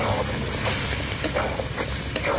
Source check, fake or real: real